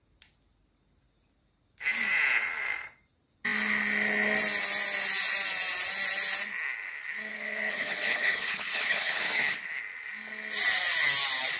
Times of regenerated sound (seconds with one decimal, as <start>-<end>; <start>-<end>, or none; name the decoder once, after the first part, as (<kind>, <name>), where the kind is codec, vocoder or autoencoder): 7.3-9.8 (codec, HILCodec)